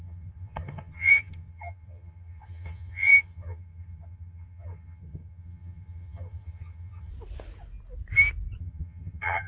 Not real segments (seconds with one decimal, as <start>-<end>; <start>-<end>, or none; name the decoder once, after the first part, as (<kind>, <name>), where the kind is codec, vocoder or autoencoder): 0.0-7.1 (vocoder, HiFi-GAN); 8.6-9.5